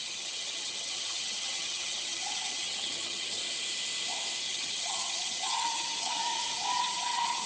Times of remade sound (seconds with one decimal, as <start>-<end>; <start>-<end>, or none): 0.0-3.4; 4.4-6.2; 6.8-7.5